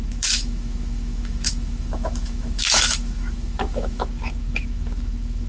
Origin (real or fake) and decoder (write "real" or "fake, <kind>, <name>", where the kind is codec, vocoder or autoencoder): fake, autoencoder, DAC-VAE